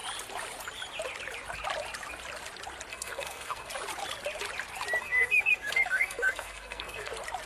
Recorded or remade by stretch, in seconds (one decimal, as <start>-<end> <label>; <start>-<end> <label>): 0.0-2.9 recorded; 2.9-3.7 remade; 3.7-5.0 recorded; 5.0-7.1 remade; 7.1-7.5 recorded